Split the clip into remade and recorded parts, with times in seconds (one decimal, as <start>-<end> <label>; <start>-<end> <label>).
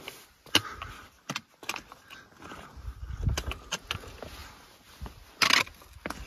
0.0-6.3 recorded